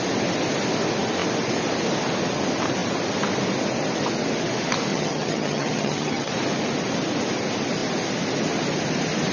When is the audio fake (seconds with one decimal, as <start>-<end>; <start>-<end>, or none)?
4.9-6.3